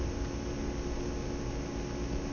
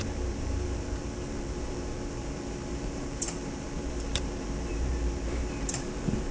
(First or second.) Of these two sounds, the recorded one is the first